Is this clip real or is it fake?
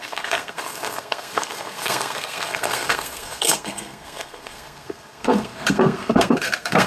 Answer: fake